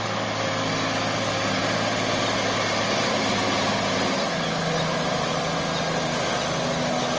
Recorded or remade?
recorded